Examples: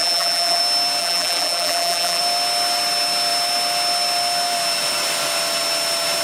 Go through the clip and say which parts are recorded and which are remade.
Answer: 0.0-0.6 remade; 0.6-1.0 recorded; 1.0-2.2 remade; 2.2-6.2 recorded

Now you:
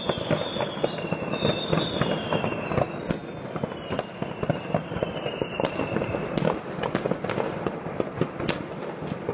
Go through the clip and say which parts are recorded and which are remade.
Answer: 0.0-9.3 recorded

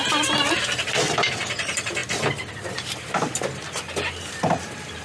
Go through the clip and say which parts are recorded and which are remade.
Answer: 0.0-1.0 recorded; 1.0-2.0 remade; 2.0-4.6 recorded; 4.6-5.0 remade

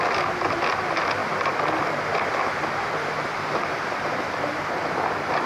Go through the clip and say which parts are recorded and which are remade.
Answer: 0.0-5.5 recorded

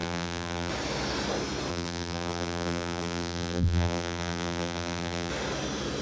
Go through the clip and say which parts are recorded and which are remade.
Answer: 0.0-0.7 remade; 0.7-1.7 recorded; 1.7-5.3 remade; 5.3-6.0 recorded

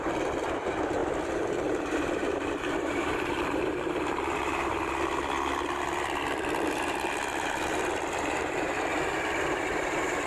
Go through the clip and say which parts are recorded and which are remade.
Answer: 0.0-4.7 remade; 4.7-6.7 recorded; 6.7-8.9 remade; 8.9-9.6 recorded; 9.6-10.3 remade